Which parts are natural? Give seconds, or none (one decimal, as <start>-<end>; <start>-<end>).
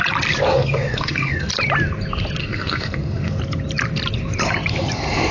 0.0-0.5; 1.5-2.4; 3.4-5.3